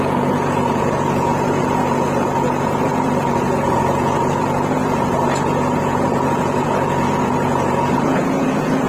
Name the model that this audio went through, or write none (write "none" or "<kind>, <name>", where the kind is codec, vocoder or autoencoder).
vocoder, Vocos